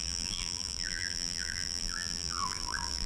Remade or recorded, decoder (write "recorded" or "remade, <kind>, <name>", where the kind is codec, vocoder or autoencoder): remade, vocoder, BigVGAN v2